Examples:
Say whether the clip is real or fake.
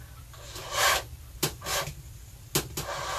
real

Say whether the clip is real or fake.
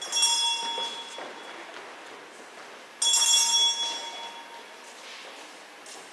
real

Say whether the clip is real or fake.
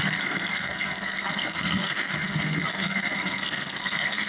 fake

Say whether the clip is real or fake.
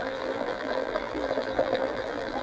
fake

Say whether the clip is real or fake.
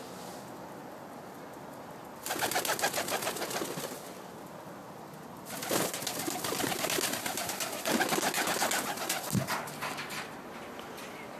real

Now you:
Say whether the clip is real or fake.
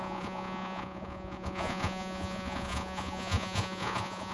fake